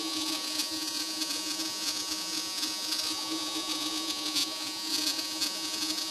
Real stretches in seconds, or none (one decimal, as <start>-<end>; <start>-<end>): none